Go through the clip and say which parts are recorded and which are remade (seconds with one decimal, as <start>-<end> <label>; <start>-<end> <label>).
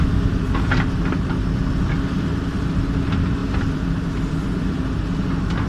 0.0-5.7 recorded